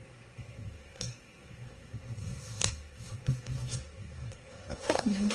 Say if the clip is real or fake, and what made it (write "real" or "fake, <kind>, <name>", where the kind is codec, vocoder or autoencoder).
fake, codec, SNAC